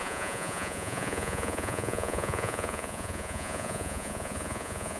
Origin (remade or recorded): remade